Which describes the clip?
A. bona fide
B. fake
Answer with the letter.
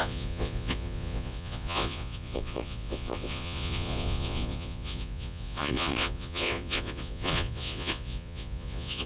B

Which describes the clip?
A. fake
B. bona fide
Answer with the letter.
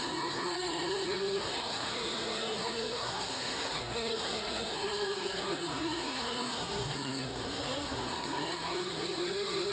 A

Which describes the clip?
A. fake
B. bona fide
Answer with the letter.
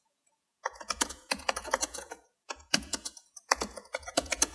A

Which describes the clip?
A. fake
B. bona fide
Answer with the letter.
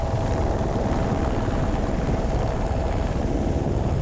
B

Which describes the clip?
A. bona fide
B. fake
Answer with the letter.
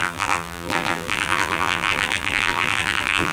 B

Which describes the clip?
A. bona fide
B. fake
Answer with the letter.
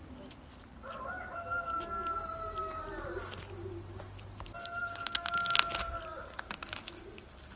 A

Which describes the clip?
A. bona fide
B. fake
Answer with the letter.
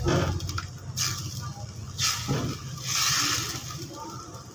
A